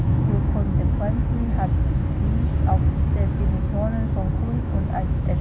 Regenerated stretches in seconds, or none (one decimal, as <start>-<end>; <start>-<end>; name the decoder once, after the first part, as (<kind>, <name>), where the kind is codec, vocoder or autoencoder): 0.0-1.2 (autoencoder, DAC-VAE); 4.4-5.4